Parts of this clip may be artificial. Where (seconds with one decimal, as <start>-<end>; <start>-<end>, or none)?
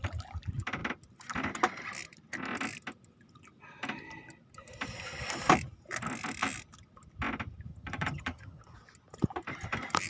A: 7.7-8.6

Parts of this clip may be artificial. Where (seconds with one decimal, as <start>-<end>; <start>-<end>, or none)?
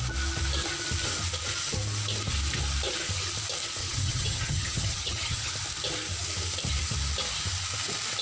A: 3.8-5.5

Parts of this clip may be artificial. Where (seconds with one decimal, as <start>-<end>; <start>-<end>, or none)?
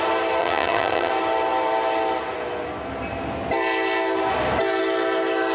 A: 0.4-1.1